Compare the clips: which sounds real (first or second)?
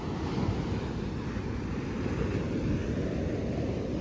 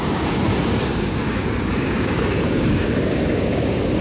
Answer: first